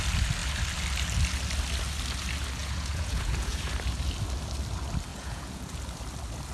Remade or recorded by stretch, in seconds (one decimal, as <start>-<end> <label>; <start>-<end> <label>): 0.0-2.6 recorded; 2.6-3.7 remade; 3.7-5.1 recorded; 5.1-5.8 remade; 5.8-6.5 recorded